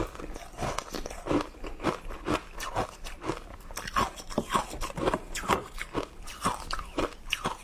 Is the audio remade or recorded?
recorded